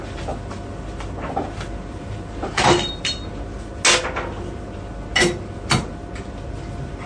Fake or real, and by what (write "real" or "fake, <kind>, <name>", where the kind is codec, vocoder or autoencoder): real